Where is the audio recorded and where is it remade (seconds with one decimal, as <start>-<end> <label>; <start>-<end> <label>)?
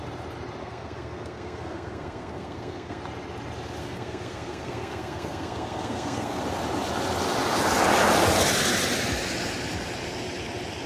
0.0-0.6 recorded; 0.6-3.0 remade; 3.0-3.8 recorded; 3.8-6.4 remade; 6.4-10.9 recorded